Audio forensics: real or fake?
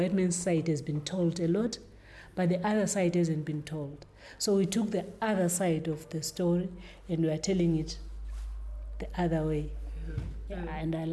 real